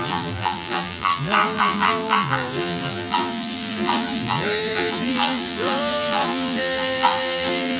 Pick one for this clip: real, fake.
fake